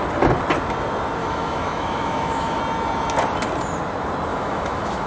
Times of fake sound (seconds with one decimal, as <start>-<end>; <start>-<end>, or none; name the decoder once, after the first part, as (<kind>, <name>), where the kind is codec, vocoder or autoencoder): 1.2-2.6 (autoencoder, DAC-VAE); 4.3-5.1